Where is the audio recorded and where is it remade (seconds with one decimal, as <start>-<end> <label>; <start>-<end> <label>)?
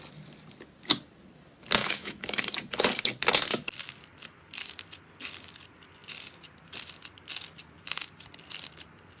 0.0-1.8 recorded; 1.8-2.4 remade; 2.4-9.2 recorded